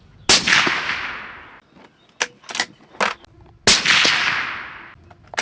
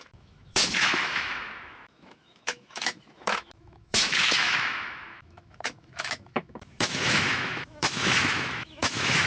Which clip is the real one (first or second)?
first